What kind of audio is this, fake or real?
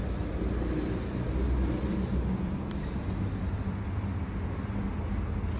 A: real